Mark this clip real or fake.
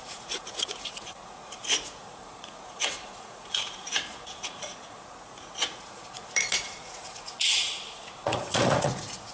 fake